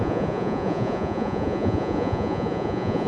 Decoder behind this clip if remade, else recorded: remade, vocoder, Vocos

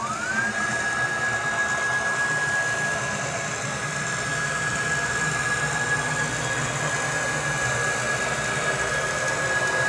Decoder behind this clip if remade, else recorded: recorded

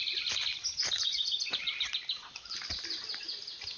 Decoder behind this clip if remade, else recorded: recorded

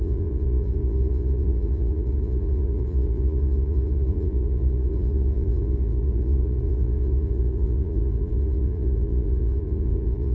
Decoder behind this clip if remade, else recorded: remade, vocoder, Vocos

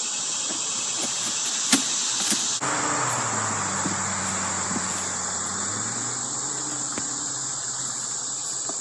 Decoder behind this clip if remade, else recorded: recorded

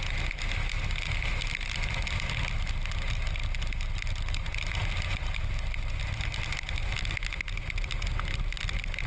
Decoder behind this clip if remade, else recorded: recorded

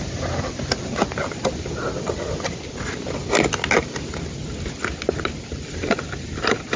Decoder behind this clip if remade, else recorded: recorded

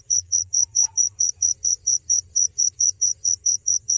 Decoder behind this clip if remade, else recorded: remade, vocoder, Vocos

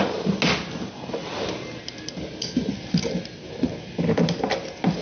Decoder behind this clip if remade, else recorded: recorded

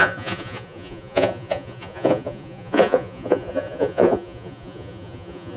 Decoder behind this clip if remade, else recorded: remade, vocoder, Vocos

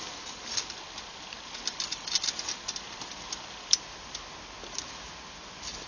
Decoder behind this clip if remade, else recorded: recorded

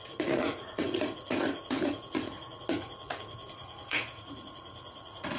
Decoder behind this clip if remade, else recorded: remade, vocoder, Vocos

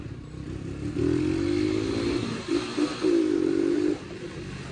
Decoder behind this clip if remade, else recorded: recorded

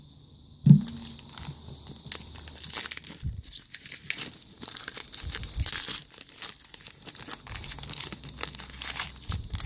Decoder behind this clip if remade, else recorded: recorded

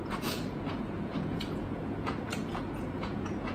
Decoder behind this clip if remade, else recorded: remade, vocoder, Vocos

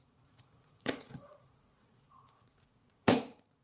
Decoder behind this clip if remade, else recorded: remade, vocoder, Vocos